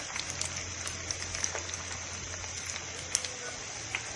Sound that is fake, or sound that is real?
real